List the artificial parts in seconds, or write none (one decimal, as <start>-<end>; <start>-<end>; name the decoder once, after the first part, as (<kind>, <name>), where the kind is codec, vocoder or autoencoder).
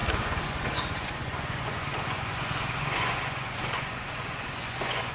0.0-5.1 (vocoder, Vocos)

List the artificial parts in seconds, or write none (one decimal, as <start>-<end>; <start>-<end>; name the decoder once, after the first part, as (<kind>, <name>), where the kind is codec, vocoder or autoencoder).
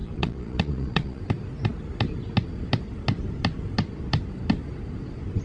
0.0-1.2 (vocoder, Vocos)